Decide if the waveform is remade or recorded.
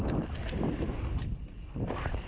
recorded